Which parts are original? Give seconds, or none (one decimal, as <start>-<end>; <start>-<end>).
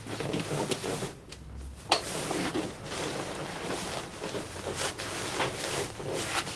0.0-6.6